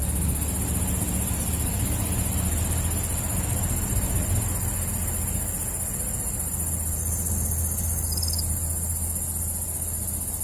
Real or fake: real